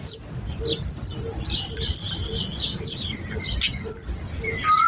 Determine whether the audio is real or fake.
real